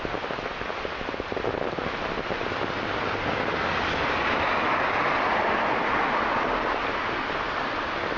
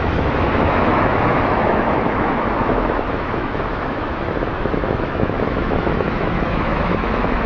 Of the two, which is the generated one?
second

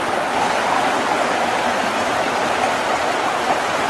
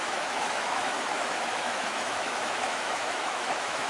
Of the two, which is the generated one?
second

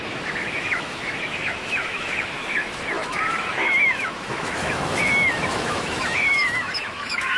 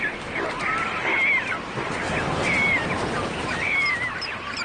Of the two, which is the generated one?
first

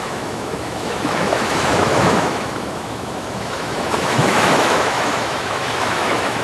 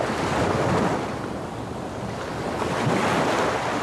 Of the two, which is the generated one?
first